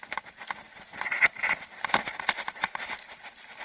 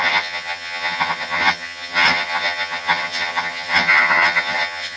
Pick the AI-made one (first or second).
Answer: second